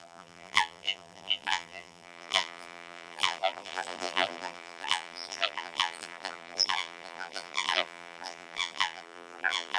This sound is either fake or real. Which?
fake